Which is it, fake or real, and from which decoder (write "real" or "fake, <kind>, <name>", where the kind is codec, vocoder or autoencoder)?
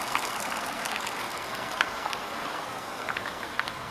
fake, codec, SNAC